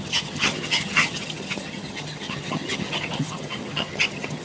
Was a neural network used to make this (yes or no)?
yes